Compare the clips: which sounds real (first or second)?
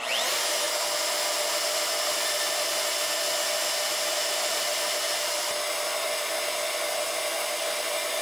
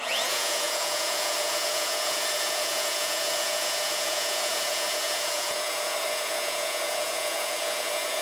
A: first